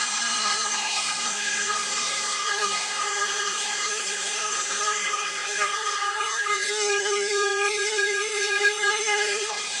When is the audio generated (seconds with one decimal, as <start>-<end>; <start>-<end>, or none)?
0.0-9.8